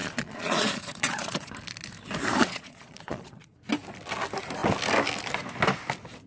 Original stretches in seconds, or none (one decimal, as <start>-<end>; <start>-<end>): 1.5-2.4; 3.7-6.3